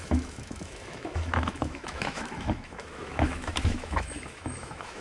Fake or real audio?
fake